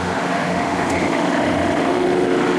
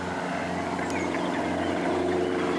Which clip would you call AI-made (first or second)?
first